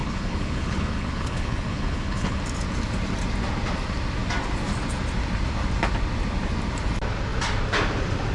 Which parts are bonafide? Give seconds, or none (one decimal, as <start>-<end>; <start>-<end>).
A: 2.4-8.3